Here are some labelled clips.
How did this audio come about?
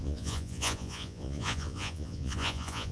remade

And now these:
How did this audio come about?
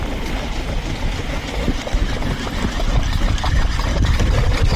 remade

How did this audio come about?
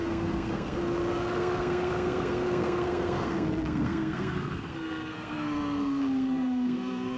remade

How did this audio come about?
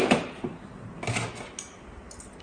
recorded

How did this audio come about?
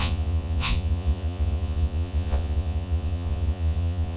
remade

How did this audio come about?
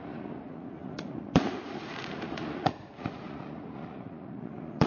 remade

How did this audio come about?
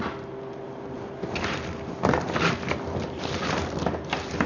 recorded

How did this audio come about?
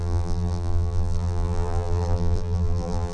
remade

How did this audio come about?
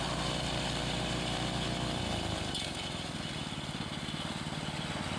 recorded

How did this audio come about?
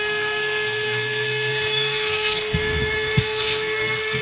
remade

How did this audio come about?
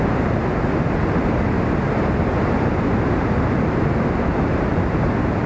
recorded